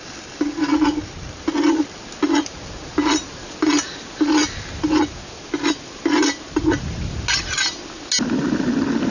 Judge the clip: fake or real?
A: real